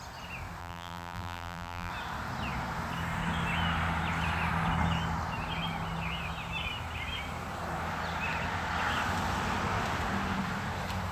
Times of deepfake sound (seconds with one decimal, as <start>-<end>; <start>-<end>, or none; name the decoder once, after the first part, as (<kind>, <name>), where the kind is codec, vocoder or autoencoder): 0.6-1.9 (vocoder, BigVGAN v2)